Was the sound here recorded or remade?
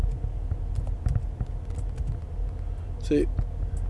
recorded